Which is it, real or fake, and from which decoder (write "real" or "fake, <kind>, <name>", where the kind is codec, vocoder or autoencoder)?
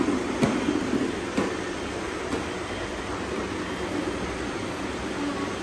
real